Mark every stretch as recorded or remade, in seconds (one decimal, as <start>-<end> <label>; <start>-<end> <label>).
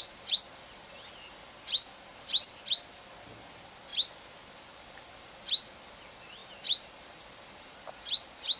0.0-8.6 recorded